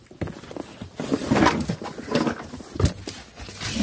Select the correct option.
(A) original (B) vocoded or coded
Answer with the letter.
A